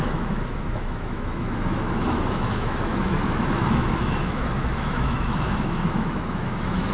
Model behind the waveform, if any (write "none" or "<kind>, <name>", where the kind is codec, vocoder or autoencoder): autoencoder, DAC-VAE